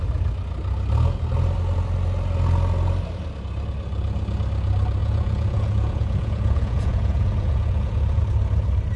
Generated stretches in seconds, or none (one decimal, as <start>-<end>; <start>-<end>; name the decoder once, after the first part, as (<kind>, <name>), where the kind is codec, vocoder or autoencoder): 5.0-8.2 (vocoder, Vocos)